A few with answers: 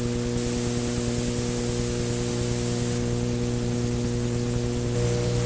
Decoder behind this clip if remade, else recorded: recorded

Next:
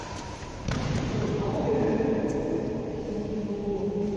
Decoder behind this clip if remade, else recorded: remade, vocoder, BigVGAN v2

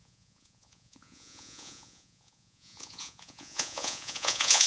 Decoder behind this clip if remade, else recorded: remade, vocoder, Vocos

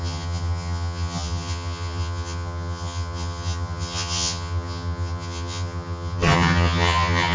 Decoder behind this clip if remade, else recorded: remade, vocoder, HiFi-GAN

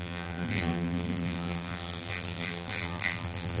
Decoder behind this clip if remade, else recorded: remade, vocoder, BigVGAN v2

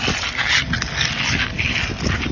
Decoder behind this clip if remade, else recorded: recorded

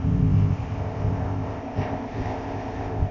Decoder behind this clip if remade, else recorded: remade, codec, ZipCodec